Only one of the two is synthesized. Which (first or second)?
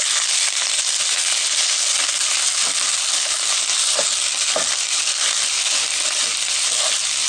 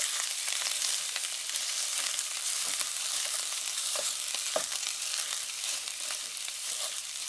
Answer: second